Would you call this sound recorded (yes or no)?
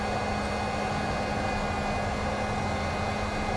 yes